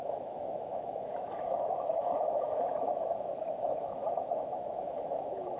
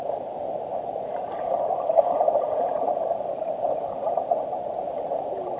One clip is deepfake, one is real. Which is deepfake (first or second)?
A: first